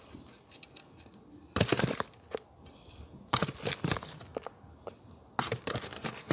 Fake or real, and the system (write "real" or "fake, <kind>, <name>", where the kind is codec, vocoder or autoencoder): real